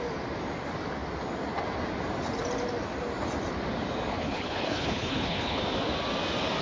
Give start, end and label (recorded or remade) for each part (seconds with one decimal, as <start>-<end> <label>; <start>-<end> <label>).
0.0-4.1 recorded; 4.1-5.6 remade; 5.6-6.6 recorded